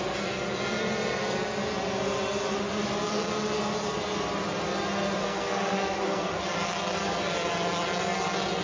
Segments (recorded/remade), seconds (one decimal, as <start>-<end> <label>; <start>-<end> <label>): 0.0-5.2 recorded; 5.2-6.4 remade; 6.4-8.6 recorded